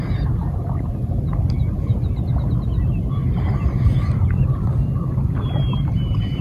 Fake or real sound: real